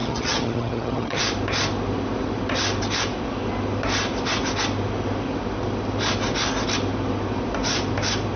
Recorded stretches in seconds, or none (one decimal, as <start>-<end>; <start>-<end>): 1.2-8.4